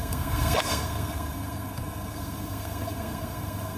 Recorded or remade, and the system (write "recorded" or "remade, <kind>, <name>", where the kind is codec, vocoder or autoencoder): remade, codec, SNAC